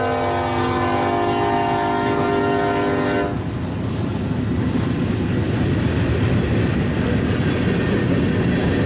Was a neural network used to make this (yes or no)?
no